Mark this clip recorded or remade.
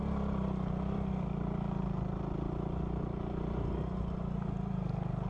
recorded